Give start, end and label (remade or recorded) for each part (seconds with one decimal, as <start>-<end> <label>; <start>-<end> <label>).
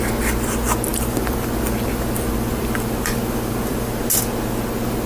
0.0-0.9 recorded; 0.9-4.0 remade; 4.0-5.1 recorded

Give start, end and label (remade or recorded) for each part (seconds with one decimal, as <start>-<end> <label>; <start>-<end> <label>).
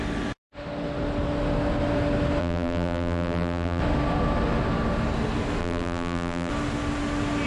0.0-2.4 recorded; 2.4-3.8 remade; 3.8-5.6 recorded; 5.6-6.5 remade; 6.5-7.5 recorded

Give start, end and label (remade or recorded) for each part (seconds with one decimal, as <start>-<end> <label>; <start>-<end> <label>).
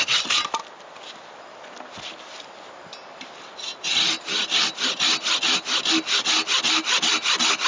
0.0-7.7 recorded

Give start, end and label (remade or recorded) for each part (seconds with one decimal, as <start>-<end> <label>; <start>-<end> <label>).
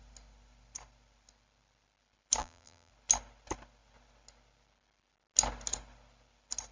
0.0-2.4 recorded; 2.4-2.9 remade; 2.9-6.7 recorded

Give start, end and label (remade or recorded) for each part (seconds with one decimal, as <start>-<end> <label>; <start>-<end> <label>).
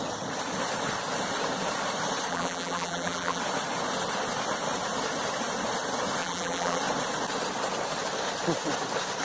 0.0-2.3 recorded; 2.3-3.4 remade; 3.4-6.2 recorded; 6.2-6.8 remade; 6.8-9.2 recorded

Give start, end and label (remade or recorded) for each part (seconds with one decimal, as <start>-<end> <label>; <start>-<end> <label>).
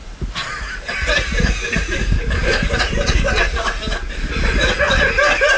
0.0-0.4 recorded; 0.4-3.8 remade; 3.8-5.6 recorded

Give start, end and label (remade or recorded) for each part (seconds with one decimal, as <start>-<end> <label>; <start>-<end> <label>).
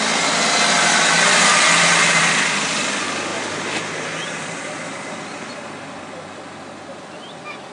0.0-3.3 recorded; 3.3-5.1 remade; 5.1-7.7 recorded